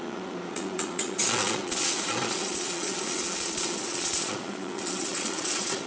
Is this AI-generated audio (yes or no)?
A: yes